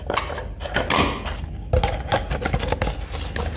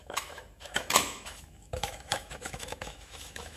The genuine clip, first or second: first